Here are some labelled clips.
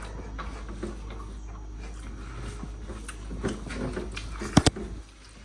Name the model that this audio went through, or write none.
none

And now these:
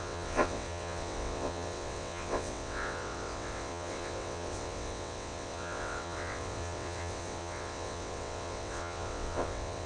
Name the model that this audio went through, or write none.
vocoder, WaveNeXt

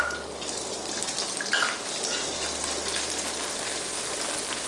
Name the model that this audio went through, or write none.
none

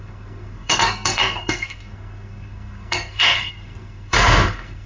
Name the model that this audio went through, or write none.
codec, SNAC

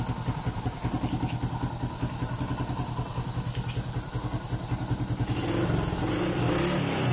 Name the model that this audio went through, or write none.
none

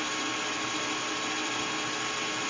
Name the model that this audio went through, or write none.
none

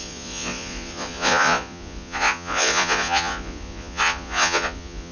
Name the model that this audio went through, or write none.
vocoder, Vocos